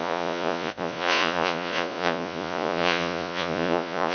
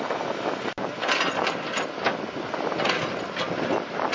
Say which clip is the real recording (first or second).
second